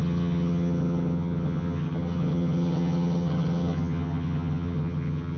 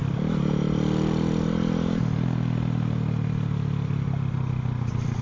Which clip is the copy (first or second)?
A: first